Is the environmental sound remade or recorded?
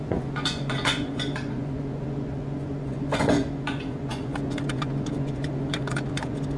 remade